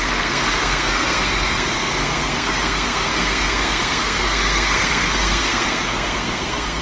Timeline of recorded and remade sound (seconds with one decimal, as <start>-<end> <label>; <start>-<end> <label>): 0.0-6.8 remade